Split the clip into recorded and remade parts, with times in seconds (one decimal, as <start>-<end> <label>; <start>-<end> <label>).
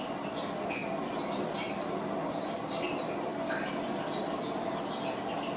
0.0-5.6 recorded